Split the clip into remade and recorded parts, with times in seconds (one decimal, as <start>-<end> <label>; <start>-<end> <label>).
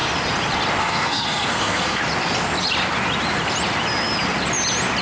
0.0-0.8 recorded; 0.8-2.0 remade; 2.0-5.0 recorded